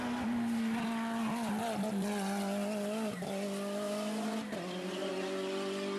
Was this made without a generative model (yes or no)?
yes